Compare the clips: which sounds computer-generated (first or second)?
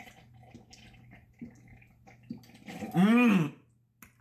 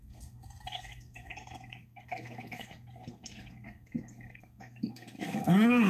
second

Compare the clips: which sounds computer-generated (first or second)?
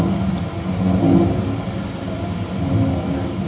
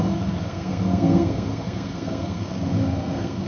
second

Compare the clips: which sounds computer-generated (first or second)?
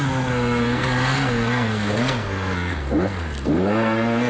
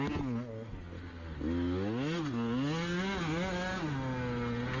first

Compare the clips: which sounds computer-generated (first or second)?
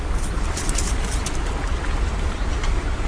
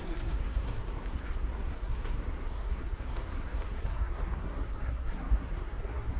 second